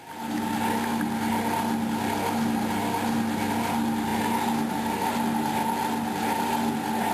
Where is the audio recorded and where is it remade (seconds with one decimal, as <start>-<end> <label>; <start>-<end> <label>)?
0.0-7.1 recorded